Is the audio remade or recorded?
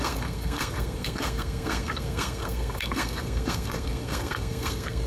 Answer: remade